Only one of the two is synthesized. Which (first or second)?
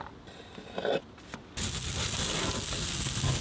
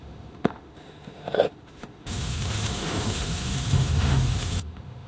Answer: second